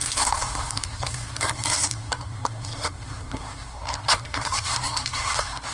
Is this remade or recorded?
remade